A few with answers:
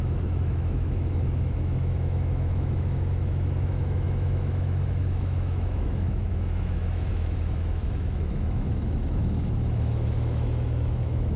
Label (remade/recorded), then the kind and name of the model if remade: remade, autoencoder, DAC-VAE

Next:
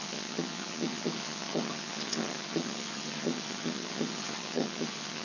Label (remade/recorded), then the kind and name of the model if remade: remade, vocoder, HiFi-GAN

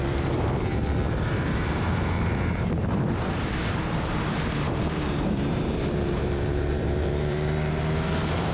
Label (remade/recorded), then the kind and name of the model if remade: remade, vocoder, BigVGAN v2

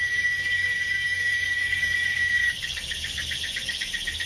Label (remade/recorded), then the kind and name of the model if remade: remade, codec, DAC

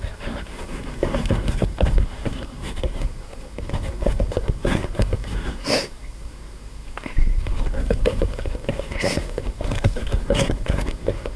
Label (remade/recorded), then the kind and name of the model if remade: remade, codec, SNAC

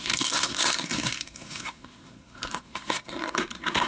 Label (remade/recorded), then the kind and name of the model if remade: remade, codec, SNAC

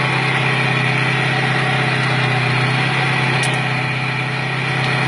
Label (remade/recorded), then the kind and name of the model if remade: recorded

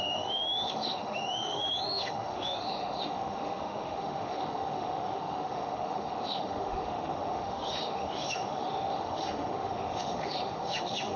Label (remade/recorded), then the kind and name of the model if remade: remade, autoencoder, DAC-VAE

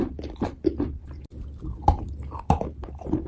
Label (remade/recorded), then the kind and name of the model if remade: recorded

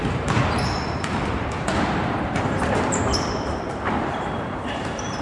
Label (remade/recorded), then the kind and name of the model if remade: remade, vocoder, BigVGAN v2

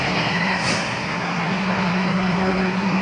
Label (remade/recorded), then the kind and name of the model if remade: remade, codec, SNAC